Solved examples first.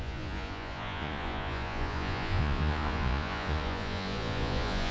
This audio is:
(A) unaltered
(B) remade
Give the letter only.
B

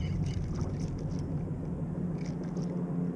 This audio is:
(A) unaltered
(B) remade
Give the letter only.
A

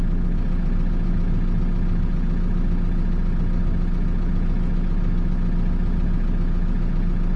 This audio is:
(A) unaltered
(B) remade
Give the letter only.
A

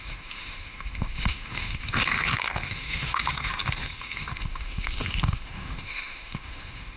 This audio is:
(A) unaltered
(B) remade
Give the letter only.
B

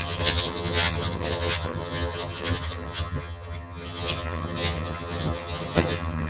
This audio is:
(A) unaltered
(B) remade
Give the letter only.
B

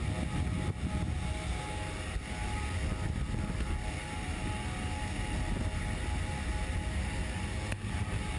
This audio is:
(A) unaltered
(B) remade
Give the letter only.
A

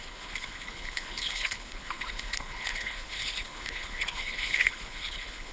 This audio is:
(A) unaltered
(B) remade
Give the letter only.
B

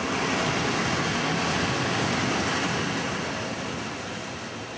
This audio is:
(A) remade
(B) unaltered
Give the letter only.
B